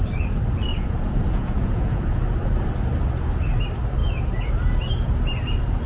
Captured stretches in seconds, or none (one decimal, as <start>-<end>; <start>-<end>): 0.0-0.7; 2.2-4.0; 4.5-5.9